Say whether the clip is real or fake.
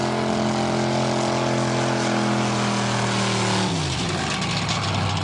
real